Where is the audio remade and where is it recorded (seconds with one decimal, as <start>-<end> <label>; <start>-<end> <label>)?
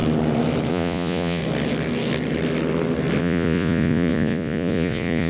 0.0-0.7 recorded; 0.7-1.4 remade; 1.4-3.2 recorded; 3.2-5.3 remade